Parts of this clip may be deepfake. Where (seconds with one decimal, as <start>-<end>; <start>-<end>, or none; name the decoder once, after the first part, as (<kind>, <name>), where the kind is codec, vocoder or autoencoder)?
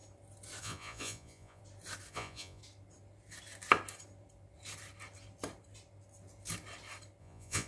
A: 0.6-1.6 (vocoder, Vocos); 2.1-2.6; 7.2-7.7